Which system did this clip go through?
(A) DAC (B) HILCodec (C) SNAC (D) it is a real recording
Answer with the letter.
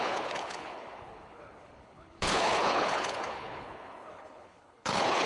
B